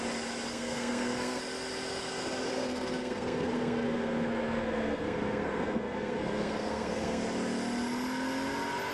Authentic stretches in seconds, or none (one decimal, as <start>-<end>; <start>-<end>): 0.0-0.5; 1.4-2.5; 7.2-8.9